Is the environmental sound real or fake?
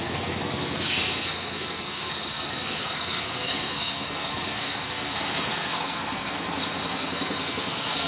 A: fake